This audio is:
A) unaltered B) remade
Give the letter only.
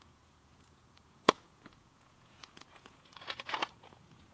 B